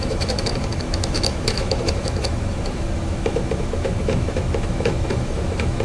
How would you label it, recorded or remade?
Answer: remade